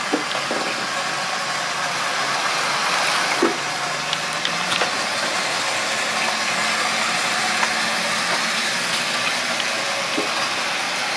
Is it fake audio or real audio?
real